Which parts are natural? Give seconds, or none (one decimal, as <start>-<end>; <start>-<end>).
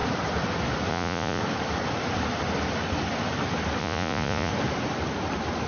0.0-0.9; 1.4-3.8; 4.5-5.7